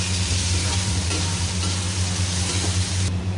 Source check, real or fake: fake